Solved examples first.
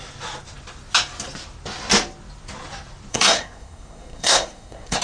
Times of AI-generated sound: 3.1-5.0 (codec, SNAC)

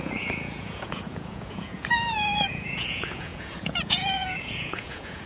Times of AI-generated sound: 0.0-5.3 (vocoder, Vocos)

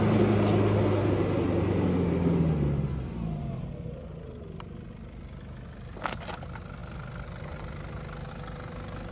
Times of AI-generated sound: none

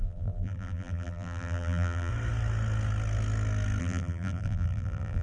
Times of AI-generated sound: 0.0-2.1 (vocoder, BigVGAN v2); 3.8-5.2